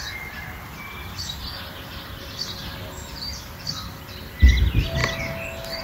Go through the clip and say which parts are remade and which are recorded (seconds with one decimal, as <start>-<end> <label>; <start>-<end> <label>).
0.0-5.8 recorded